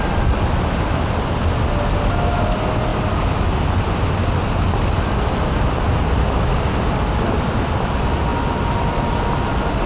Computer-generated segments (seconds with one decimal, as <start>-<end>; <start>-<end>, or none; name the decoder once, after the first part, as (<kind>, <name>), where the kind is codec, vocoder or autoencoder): none